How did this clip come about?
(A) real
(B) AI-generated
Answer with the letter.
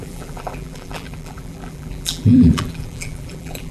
B